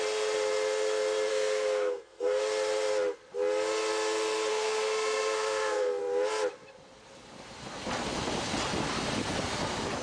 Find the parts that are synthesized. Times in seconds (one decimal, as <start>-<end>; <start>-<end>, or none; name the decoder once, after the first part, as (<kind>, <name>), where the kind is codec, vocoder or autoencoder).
1.3-2.4 (codec, SNAC); 4.5-6.0